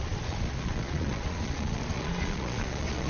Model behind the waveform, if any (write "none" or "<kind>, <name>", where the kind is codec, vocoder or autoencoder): vocoder, Vocos